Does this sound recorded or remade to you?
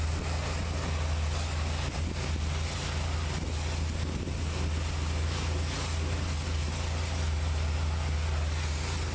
recorded